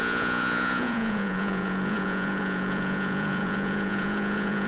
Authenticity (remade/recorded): remade